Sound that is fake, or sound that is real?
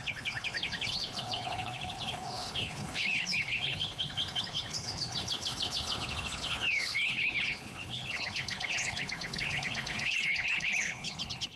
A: fake